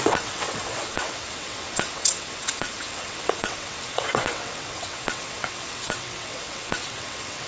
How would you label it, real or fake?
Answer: fake